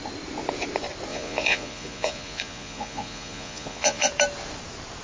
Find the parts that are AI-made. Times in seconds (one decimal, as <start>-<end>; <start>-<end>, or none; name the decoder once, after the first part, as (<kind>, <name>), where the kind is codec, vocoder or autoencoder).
1.1-4.1 (vocoder, Vocos)